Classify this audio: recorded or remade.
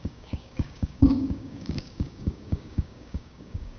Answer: remade